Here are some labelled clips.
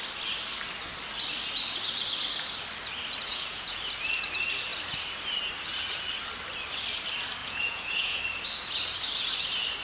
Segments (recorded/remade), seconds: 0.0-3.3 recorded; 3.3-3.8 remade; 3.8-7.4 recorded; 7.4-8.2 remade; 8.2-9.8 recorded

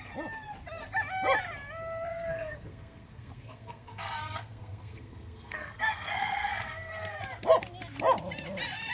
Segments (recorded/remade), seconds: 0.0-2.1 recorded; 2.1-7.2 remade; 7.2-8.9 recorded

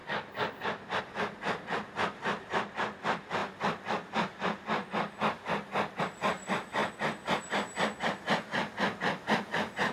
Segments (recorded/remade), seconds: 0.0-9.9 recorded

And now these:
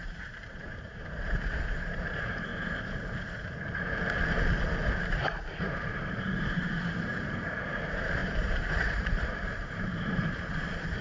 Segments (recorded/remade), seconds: 0.0-2.5 remade; 2.5-5.6 recorded; 5.6-11.0 remade

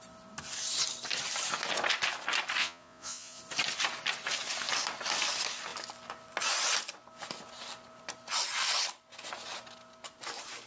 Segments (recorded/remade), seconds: 0.0-2.6 recorded; 2.6-3.4 remade; 3.4-10.7 recorded

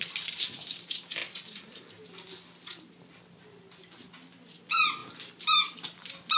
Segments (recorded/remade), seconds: 0.0-6.4 recorded

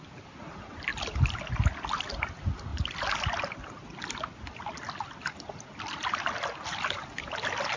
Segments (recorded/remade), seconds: 0.0-7.8 recorded